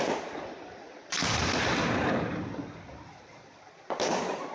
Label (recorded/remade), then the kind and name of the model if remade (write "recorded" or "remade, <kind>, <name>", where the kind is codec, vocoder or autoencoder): remade, vocoder, BigVGAN v2